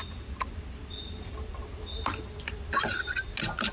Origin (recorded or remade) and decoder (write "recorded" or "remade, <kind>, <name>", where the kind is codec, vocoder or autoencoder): recorded